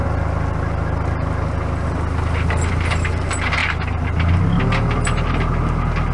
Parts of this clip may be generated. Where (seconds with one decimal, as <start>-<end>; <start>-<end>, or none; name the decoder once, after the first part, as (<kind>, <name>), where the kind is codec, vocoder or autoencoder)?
none